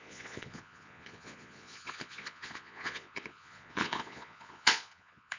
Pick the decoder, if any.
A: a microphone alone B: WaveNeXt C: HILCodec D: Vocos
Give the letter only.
D